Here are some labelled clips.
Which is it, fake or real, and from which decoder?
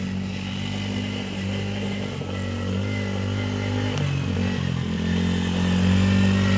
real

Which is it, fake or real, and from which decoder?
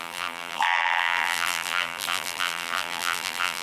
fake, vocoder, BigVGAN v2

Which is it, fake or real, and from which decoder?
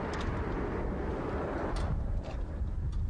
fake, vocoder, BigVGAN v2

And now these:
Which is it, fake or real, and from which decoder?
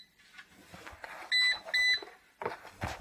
real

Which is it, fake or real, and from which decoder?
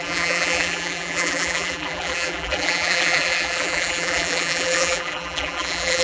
fake, vocoder, BigVGAN v2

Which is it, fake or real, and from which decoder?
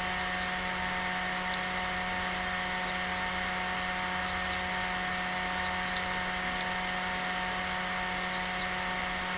real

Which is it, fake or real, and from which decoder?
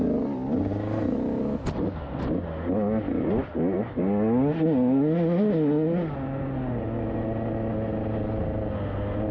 real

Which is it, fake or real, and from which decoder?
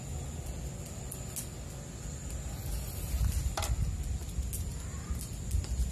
real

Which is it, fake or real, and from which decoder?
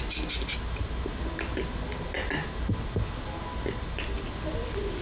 real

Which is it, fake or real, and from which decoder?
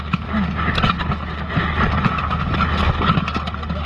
real